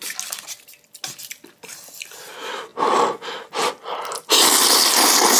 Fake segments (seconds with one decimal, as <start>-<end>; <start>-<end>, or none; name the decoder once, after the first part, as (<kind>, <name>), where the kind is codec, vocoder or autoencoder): none